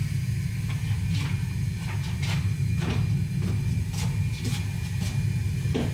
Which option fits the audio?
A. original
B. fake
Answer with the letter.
A